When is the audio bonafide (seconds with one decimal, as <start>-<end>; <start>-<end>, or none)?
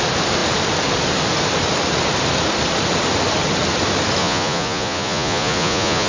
0.0-4.2